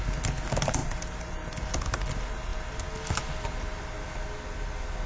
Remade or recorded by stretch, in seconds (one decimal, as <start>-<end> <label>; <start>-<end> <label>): 0.0-5.1 recorded